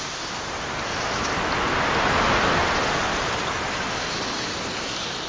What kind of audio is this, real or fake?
real